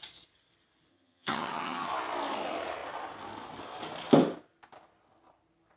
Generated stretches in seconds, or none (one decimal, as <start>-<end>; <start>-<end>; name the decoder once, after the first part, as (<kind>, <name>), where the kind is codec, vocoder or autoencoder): 0.9-1.9 (vocoder, HiFi-GAN)